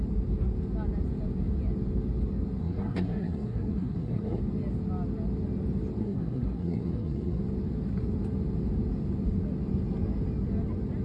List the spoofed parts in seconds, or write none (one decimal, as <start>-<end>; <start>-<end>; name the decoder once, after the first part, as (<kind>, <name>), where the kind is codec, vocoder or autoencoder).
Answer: 2.6-4.4 (codec, SNAC); 6.0-7.4